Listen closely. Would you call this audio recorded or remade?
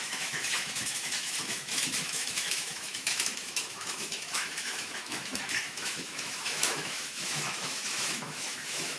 remade